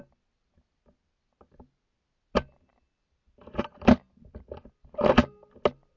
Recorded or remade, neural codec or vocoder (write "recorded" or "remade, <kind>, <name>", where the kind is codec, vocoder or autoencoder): recorded